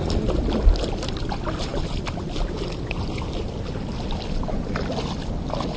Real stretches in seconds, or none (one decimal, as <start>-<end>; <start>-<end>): 0.0-5.8